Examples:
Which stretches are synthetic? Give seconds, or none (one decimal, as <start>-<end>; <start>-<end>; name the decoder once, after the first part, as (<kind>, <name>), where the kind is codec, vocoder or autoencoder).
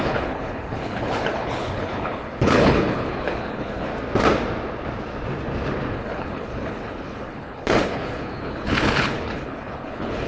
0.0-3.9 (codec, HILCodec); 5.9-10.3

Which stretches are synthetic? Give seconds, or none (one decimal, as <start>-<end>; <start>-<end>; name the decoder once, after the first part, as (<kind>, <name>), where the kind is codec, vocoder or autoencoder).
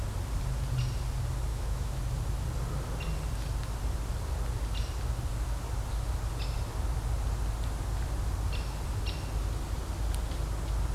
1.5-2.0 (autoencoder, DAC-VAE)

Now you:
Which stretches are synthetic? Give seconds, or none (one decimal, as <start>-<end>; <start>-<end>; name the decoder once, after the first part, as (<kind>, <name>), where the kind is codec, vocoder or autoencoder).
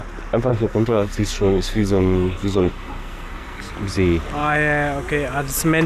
0.5-3.7 (codec, SNAC)